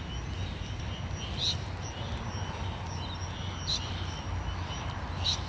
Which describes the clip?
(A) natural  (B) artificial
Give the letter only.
A